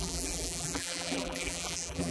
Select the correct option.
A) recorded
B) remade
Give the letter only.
B